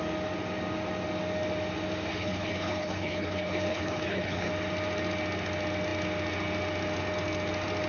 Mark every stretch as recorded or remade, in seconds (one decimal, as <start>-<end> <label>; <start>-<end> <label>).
0.0-2.1 recorded; 2.1-4.5 remade; 4.5-7.9 recorded